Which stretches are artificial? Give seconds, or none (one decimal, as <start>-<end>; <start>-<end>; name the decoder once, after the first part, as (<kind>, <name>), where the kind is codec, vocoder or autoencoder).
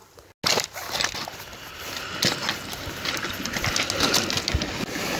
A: none